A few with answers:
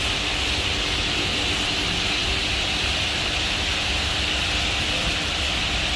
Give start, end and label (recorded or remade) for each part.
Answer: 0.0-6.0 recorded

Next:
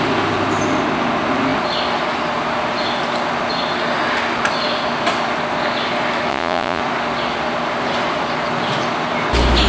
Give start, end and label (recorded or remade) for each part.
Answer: 0.0-6.3 recorded; 6.3-6.8 remade; 6.8-9.7 recorded

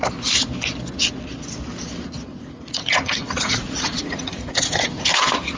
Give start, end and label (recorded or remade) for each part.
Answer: 0.0-2.3 recorded; 2.3-5.1 remade; 5.1-5.6 recorded

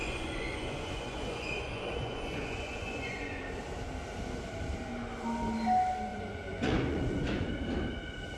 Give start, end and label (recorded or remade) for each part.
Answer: 0.0-3.4 remade; 3.4-6.1 recorded; 6.1-7.5 remade; 7.5-8.4 recorded